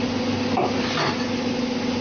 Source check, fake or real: real